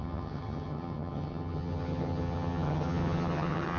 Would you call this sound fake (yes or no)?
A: yes